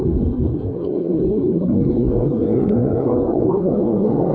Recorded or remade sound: remade